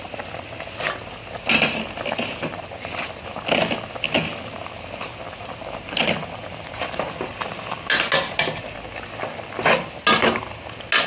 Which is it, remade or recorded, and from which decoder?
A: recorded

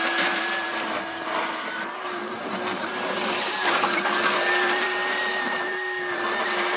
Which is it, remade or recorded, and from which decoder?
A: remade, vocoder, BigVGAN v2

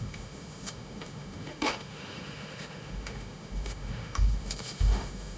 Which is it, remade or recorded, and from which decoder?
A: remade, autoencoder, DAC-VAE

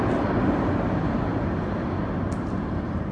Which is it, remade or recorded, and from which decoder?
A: recorded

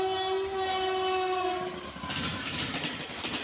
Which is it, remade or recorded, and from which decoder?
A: recorded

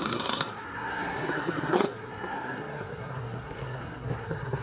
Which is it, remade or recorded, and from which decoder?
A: remade, codec, SNAC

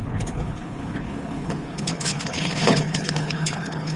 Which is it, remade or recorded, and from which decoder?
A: remade, codec, HILCodec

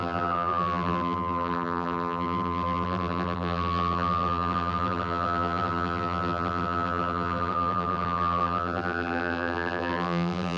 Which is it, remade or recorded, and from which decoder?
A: remade, vocoder, BigVGAN v2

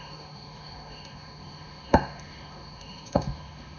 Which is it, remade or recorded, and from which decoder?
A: remade, autoencoder, DAC-VAE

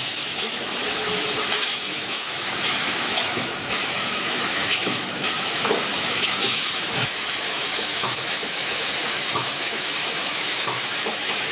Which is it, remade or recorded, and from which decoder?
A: remade, autoencoder, DAC-VAE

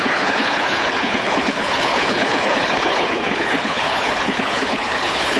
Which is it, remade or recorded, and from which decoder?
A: remade, codec, HILCodec